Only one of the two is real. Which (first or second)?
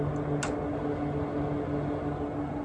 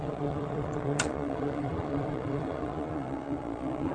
first